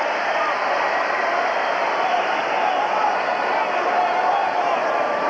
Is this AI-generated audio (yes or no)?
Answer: no